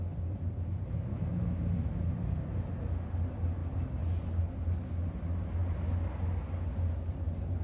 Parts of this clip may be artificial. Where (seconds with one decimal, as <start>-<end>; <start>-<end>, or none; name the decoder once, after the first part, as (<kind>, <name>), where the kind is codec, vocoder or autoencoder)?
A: 1.1-2.2 (autoencoder, DAC-VAE)